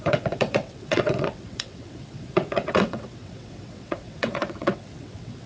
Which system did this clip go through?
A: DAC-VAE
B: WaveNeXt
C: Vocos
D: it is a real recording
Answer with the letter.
B